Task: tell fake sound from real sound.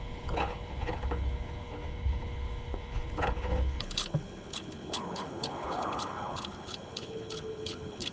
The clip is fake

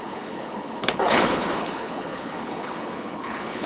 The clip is fake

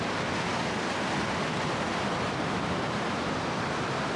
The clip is real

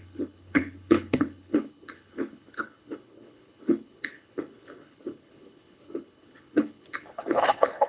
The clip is fake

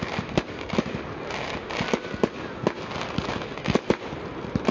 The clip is real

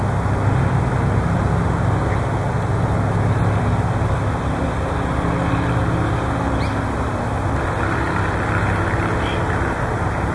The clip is real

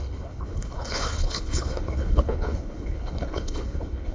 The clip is fake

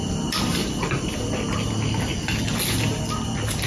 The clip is real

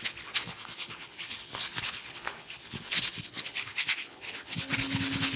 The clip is fake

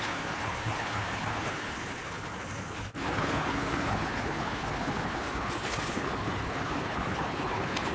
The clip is fake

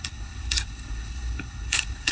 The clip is fake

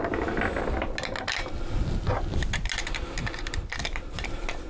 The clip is real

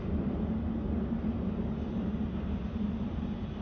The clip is real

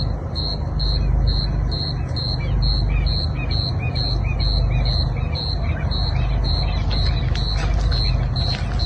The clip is real